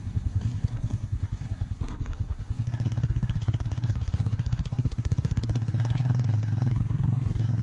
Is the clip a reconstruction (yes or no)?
yes